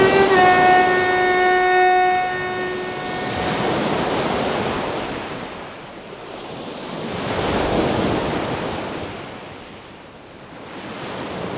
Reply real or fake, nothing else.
real